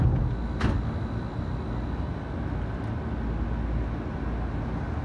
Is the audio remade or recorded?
recorded